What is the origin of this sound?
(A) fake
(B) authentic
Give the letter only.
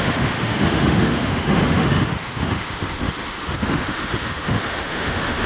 A